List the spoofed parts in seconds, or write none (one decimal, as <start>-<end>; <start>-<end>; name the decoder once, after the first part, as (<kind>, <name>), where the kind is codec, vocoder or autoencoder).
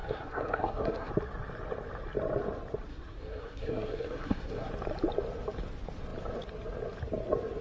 0.0-1.1 (codec, SNAC); 2.9-4.7